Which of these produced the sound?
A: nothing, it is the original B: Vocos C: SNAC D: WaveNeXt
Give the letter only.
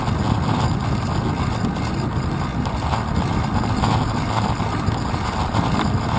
A